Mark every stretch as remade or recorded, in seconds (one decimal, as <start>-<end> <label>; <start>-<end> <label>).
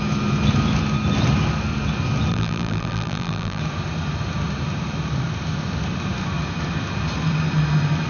0.0-2.3 recorded; 2.3-3.6 remade; 3.6-8.1 recorded